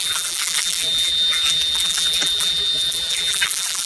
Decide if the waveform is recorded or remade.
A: remade